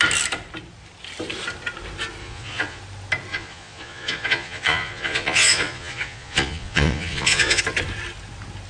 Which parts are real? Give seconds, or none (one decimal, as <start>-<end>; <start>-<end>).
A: 0.0-2.2; 2.8-3.3; 7.6-8.7